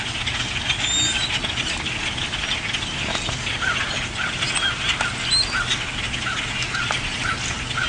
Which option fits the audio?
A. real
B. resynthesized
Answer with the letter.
A